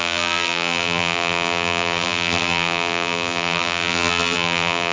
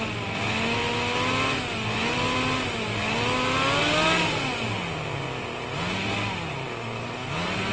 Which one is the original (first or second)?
second